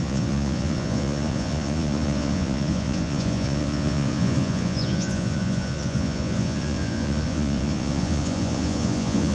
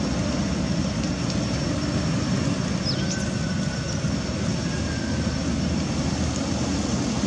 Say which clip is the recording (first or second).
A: second